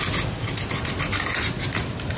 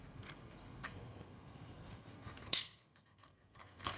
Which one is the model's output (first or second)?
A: second